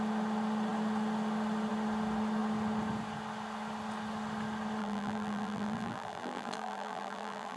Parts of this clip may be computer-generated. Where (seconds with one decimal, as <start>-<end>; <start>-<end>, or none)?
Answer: 4.8-7.6